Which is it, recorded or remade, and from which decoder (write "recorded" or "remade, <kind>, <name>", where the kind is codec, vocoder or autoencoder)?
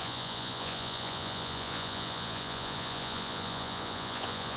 remade, vocoder, Vocos